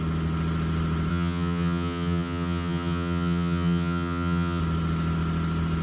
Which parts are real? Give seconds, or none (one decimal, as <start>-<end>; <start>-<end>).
0.0-1.1; 4.6-5.8

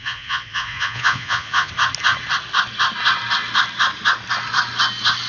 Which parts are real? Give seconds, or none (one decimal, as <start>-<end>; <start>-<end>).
1.7-5.3

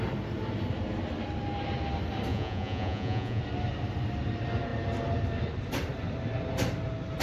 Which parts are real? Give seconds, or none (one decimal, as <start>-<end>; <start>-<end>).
0.0-2.3; 3.4-7.2

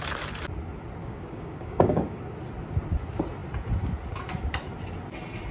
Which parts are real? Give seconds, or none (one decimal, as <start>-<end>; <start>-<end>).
0.0-1.0; 2.2-5.5